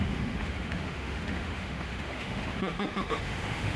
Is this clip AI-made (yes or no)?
yes